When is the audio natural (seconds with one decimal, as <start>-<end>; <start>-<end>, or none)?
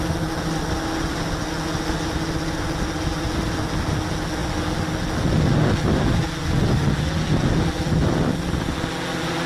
0.0-9.5